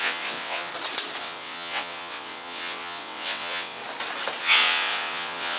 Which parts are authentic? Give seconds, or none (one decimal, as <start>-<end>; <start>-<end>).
0.7-1.2; 3.8-4.4